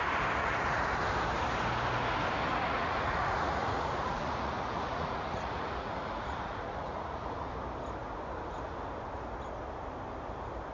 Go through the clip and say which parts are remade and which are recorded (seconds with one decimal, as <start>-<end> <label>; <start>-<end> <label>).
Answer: 0.0-0.4 recorded; 0.4-0.9 remade; 0.9-2.5 recorded; 2.5-7.5 remade; 7.5-10.7 recorded